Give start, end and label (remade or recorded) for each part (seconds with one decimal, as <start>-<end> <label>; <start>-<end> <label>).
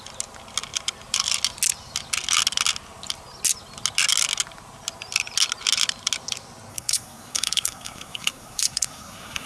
0.0-6.7 recorded; 6.7-9.5 remade